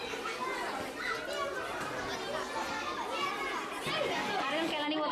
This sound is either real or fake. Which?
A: real